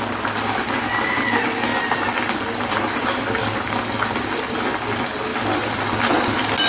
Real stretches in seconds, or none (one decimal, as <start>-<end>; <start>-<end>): 0.0-6.7

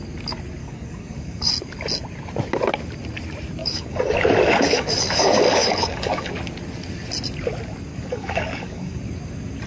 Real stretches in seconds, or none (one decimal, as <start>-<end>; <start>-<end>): 0.0-0.6; 1.5-3.6; 6.3-7.9; 9.0-9.7

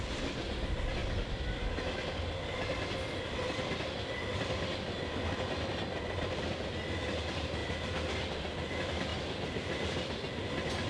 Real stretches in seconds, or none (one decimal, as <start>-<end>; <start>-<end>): 0.0-10.9

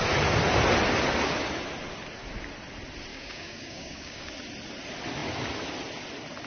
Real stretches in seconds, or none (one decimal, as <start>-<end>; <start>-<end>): 0.0-3.1; 4.3-6.5

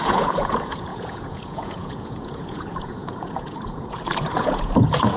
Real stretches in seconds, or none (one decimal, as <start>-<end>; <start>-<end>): none

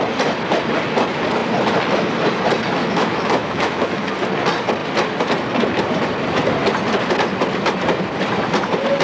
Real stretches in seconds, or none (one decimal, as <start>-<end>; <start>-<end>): 0.0-2.8; 4.1-9.0

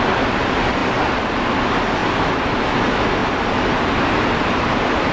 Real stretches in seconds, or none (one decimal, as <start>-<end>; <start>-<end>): 0.0-5.1